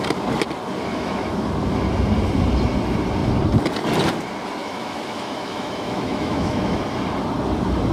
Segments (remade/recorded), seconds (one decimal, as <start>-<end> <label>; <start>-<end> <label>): 0.0-0.9 recorded; 0.9-1.5 remade; 1.5-4.6 recorded; 4.6-6.8 remade; 6.8-7.9 recorded